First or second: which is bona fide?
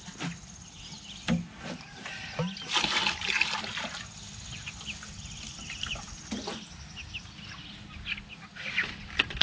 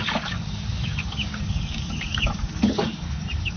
first